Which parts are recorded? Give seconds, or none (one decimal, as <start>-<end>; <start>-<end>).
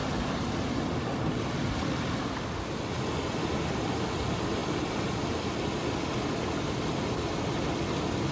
0.0-8.3